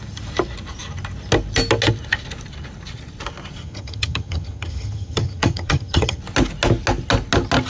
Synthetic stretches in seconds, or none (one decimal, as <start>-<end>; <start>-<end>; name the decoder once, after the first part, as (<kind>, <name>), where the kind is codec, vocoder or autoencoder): 3.6-6.2 (vocoder, HiFi-GAN)

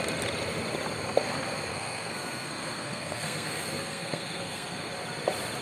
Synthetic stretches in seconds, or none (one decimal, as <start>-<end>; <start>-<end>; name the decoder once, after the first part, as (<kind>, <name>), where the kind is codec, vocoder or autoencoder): 1.7-4.9 (codec, SNAC)

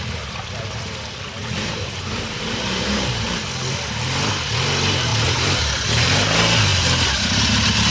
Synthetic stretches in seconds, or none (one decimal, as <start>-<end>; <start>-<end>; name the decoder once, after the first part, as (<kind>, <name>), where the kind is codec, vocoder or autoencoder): 1.4-3.4 (vocoder, BigVGAN v2); 5.1-5.9; 6.7-7.5

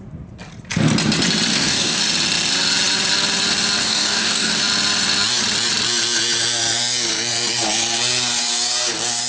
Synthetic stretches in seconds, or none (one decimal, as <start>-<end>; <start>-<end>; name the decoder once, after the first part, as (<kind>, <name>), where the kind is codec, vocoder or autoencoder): 1.5-2.0 (codec, DAC); 3.8-4.6